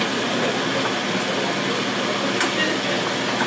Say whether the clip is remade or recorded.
recorded